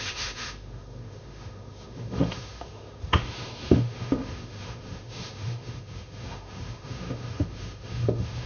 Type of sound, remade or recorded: remade